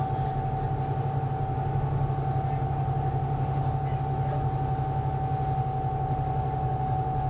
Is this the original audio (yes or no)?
yes